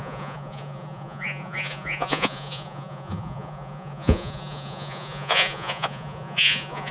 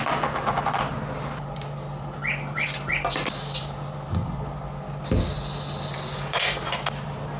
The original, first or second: second